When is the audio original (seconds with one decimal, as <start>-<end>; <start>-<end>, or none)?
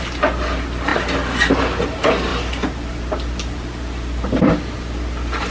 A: 0.0-0.9; 1.6-2.3